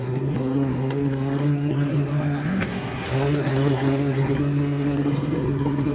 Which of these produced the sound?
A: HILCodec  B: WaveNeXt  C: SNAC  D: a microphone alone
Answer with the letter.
C